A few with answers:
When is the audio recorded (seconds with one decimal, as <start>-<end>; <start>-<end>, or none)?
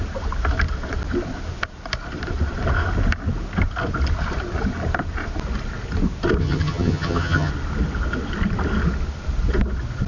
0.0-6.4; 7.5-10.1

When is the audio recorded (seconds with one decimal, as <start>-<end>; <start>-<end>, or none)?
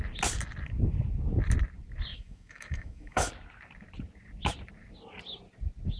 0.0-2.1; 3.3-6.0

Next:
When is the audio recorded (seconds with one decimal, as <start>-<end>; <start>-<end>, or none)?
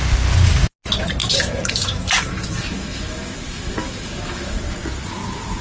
0.0-1.2; 4.6-5.6